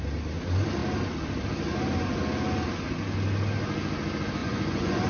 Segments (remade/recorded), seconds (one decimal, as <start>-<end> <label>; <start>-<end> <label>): 0.0-4.4 recorded; 4.4-5.1 remade